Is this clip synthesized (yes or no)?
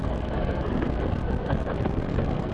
yes